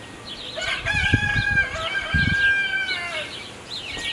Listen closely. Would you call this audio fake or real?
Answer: real